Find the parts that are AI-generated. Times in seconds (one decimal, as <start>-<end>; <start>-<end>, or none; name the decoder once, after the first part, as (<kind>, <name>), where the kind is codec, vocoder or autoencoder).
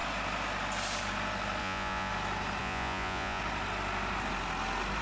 1.6-2.1 (vocoder, Vocos); 2.6-3.4